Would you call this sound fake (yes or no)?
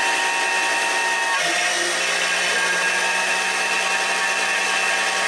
no